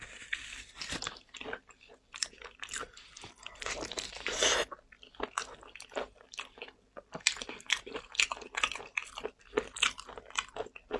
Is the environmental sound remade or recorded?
recorded